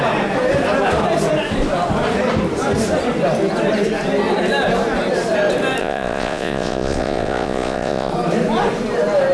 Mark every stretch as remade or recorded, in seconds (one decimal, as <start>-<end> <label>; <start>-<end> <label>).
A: 0.0-5.8 recorded; 5.8-8.1 remade; 8.1-9.3 recorded